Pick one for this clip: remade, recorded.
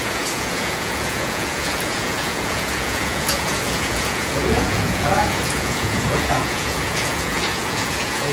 remade